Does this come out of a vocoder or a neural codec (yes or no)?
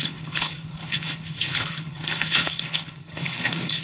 yes